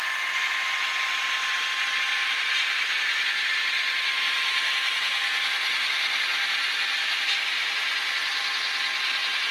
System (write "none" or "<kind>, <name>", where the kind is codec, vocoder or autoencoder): none